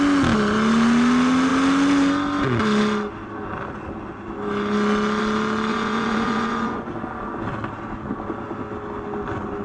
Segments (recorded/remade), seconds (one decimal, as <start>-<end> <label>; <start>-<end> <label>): 0.0-5.7 recorded; 5.7-6.9 remade; 6.9-9.6 recorded